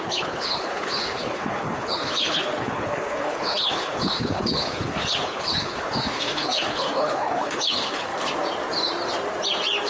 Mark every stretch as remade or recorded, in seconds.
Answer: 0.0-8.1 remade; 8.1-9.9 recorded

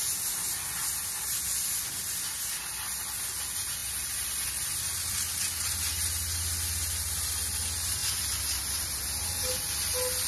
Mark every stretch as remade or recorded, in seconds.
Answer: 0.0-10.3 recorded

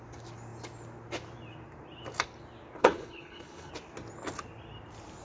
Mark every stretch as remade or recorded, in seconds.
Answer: 0.0-2.8 recorded; 2.8-3.7 remade; 3.7-5.2 recorded